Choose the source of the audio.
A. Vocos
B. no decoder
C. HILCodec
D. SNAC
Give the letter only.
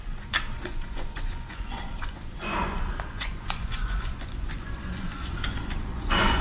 A